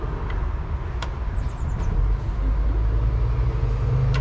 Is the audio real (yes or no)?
yes